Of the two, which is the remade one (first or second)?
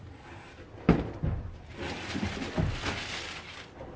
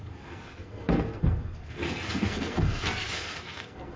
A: second